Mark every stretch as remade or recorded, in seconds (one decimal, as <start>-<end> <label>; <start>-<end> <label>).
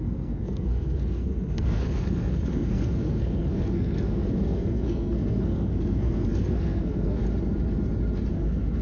0.0-7.2 remade; 7.2-8.3 recorded; 8.3-8.8 remade